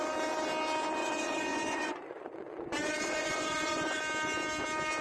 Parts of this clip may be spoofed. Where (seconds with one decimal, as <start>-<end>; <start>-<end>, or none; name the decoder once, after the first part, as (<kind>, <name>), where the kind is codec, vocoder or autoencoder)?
1.0-4.0 (vocoder, Vocos)